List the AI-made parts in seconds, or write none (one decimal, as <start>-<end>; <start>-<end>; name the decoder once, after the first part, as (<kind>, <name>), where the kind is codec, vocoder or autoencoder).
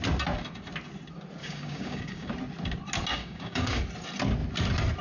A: 1.4-2.3 (codec, DAC); 3.1-3.8